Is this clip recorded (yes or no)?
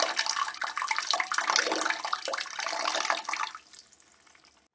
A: yes